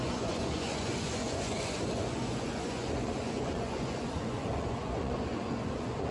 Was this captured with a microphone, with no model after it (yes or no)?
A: no